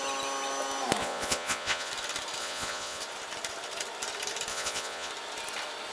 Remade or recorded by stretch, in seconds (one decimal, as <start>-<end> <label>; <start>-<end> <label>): 0.0-1.0 recorded; 1.0-1.9 remade; 1.9-2.4 recorded; 2.4-3.0 remade; 3.0-4.5 recorded; 4.5-5.1 remade; 5.1-5.9 recorded